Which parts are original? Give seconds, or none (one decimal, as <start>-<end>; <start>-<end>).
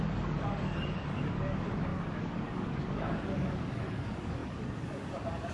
none